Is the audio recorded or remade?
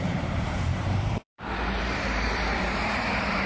remade